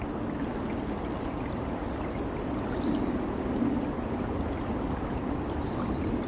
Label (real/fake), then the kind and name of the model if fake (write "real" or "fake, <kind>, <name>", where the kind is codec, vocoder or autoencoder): real